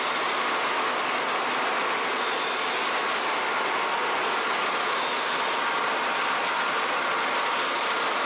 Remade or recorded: recorded